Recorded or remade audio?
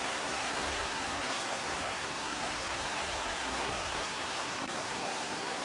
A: remade